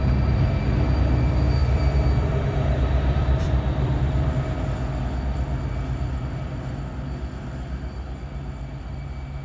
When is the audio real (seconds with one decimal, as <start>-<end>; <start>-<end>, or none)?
0.0-1.6; 4.3-9.4